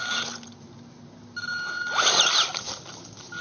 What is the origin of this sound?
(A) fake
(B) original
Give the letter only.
B